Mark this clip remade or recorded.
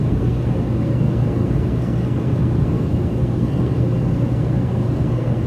remade